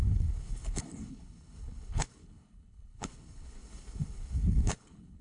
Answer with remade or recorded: remade